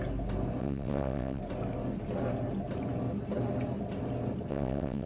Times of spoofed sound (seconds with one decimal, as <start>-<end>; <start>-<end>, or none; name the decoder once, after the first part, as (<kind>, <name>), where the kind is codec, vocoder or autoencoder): 0.6-1.4 (vocoder, WaveNeXt); 4.5-5.1